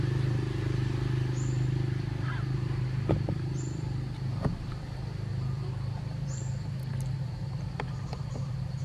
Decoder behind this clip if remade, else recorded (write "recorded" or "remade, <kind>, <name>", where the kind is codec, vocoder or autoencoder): remade, vocoder, BigVGAN v2